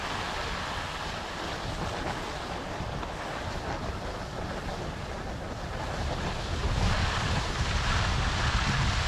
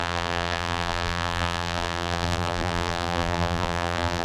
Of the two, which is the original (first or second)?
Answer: first